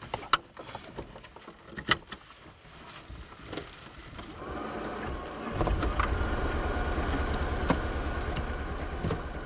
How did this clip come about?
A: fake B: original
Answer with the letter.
B